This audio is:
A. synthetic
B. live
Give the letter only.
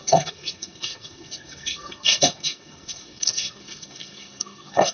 A